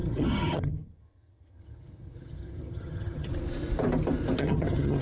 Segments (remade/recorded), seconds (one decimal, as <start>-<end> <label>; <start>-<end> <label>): 0.0-3.3 remade; 3.3-4.4 recorded; 4.4-5.0 remade

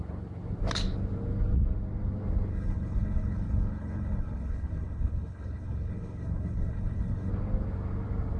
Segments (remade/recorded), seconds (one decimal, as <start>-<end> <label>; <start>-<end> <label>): 0.0-2.5 recorded; 2.5-7.3 remade; 7.3-8.4 recorded

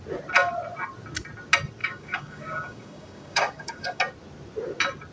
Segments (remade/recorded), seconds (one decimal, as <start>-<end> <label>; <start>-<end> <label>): 0.0-1.8 recorded; 1.8-4.0 remade; 4.0-5.1 recorded

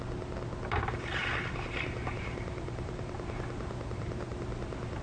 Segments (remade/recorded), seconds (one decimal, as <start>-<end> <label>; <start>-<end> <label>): 0.0-5.0 recorded

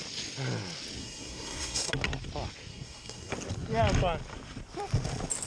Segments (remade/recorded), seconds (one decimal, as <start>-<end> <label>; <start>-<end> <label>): 0.0-1.0 recorded; 1.0-1.9 remade; 1.9-2.7 recorded; 2.7-3.3 remade; 3.3-5.5 recorded

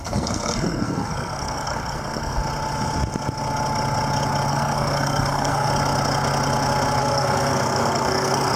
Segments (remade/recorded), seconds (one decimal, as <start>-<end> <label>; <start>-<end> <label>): 0.0-2.4 remade; 2.4-4.5 recorded; 4.5-5.7 remade; 5.7-7.0 recorded; 7.0-8.6 remade

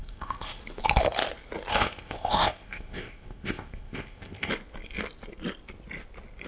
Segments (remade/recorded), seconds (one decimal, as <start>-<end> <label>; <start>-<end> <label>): 0.0-0.6 remade; 0.6-1.7 recorded; 1.7-4.5 remade; 4.5-6.5 recorded

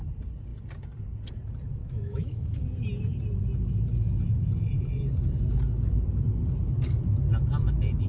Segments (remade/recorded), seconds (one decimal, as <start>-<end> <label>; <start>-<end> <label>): 0.0-1.8 recorded; 1.8-2.6 remade; 2.6-8.1 recorded